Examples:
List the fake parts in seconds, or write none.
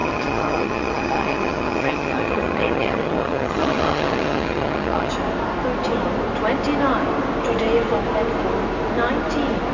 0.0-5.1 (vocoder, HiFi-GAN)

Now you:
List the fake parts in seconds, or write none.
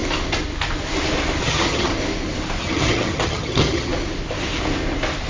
1.4-1.9 (vocoder, HiFi-GAN); 2.6-3.9